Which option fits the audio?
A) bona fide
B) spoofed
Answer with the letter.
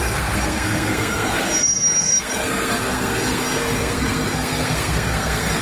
B